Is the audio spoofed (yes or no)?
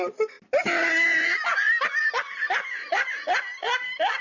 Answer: no